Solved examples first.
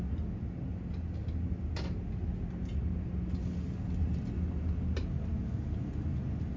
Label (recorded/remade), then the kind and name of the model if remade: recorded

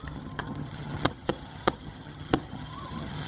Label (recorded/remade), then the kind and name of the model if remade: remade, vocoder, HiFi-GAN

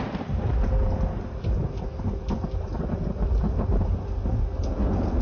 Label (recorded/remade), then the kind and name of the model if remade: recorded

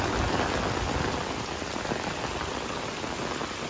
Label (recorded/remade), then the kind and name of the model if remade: recorded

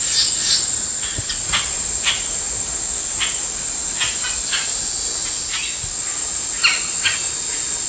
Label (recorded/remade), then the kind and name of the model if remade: recorded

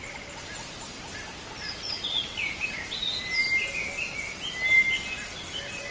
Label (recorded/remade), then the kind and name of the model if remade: recorded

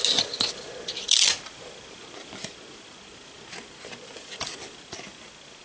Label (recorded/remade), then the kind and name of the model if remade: recorded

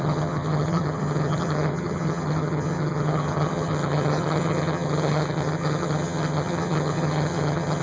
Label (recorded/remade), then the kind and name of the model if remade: remade, vocoder, HiFi-GAN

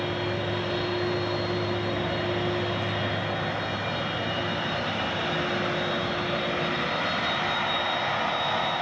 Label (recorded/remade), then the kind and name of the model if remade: recorded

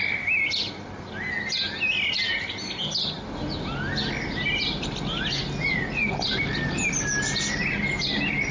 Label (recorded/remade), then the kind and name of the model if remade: recorded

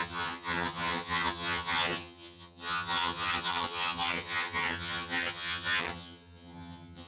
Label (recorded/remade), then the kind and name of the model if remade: remade, vocoder, HiFi-GAN